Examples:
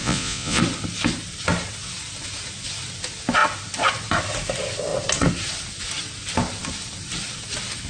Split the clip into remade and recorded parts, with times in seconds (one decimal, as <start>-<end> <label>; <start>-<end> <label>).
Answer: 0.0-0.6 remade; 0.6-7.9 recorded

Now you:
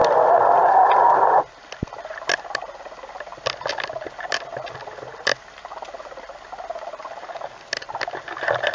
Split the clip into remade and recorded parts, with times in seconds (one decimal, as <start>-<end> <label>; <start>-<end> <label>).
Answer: 0.0-8.7 recorded

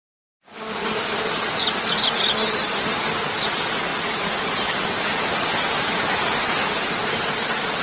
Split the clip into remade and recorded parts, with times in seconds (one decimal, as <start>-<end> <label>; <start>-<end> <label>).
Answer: 0.0-7.8 recorded